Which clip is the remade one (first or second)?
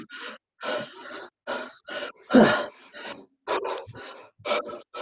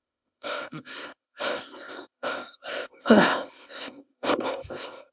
second